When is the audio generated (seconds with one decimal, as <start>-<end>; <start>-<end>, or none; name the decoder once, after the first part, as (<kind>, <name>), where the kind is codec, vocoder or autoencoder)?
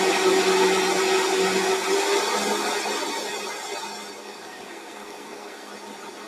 4.2-5.7 (codec, SNAC)